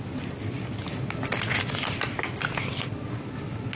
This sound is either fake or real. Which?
real